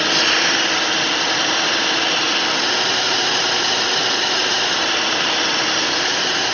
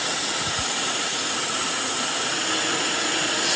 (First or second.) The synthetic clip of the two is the second